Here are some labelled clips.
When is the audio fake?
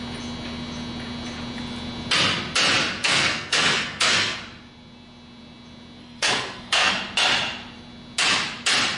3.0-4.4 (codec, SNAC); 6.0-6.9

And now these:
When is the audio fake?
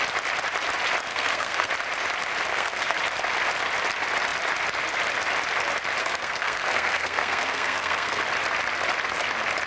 1.1-1.7 (codec, SNAC); 2.5-3.0; 6.0-8.2